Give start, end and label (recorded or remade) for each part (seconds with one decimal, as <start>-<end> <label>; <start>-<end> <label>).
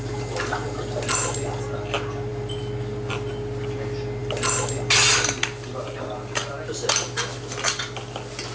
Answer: 0.0-8.5 recorded